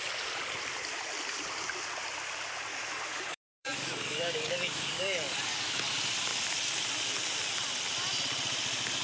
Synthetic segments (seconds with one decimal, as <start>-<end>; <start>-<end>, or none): 2.7-5.6